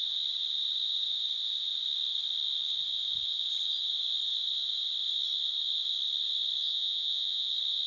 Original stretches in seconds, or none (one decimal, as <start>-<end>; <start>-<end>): 0.0-6.7; 7.5-7.9